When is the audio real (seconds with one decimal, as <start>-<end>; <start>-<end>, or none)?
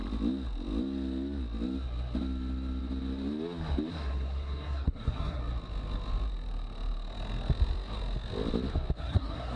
0.0-3.9; 5.4-9.0